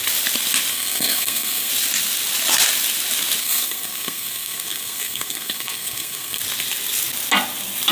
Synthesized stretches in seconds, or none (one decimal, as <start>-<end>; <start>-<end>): 0.7-1.7; 3.4-6.4